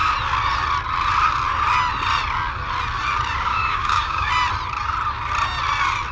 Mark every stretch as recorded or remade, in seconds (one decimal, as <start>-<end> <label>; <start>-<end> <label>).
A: 0.0-3.5 recorded; 3.5-4.3 remade; 4.3-6.1 recorded